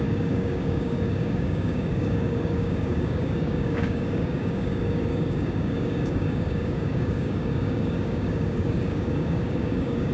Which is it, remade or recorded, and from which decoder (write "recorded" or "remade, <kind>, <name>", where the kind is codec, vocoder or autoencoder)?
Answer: remade, codec, DAC